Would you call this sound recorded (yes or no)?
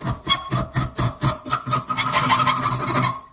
yes